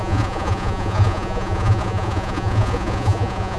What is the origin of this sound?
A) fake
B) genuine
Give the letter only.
A